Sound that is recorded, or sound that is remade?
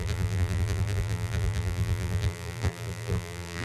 remade